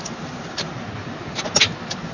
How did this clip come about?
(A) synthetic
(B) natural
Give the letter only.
B